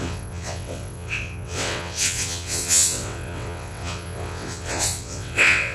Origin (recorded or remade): remade